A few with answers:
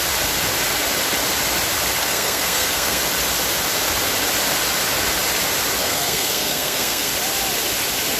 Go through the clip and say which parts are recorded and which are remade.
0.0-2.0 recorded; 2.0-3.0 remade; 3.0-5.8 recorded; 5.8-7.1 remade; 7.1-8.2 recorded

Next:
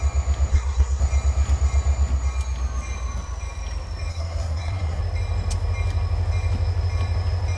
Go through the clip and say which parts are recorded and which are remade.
0.0-0.5 recorded; 0.5-1.0 remade; 1.0-4.1 recorded; 4.1-5.0 remade; 5.0-7.6 recorded